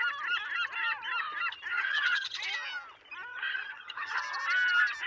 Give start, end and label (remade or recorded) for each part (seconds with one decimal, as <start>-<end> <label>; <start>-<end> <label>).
0.0-1.7 recorded; 1.7-2.4 remade; 2.4-3.3 recorded; 3.3-4.2 remade; 4.2-5.1 recorded